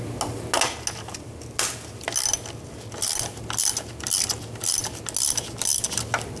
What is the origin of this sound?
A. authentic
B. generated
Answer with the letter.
A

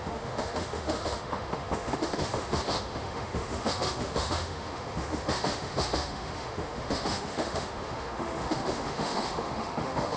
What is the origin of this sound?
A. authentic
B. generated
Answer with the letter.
B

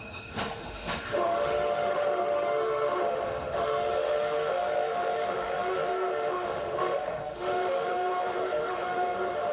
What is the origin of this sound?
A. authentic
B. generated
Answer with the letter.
B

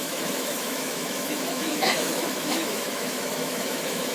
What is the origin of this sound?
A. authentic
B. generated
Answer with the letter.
B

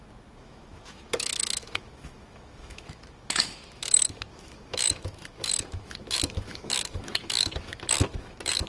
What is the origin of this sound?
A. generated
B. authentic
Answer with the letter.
A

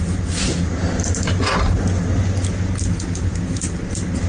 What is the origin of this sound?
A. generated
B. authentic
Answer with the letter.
B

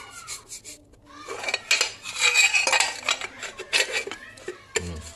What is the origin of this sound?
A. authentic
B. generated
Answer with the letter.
A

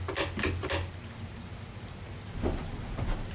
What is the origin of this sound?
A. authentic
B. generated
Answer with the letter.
A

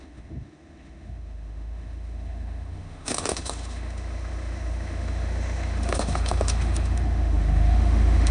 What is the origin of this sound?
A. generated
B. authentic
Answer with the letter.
A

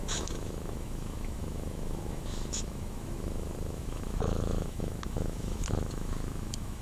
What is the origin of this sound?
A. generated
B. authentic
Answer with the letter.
A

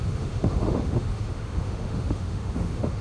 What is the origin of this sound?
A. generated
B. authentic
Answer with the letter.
A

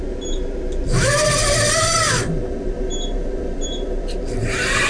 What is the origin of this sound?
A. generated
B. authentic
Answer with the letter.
B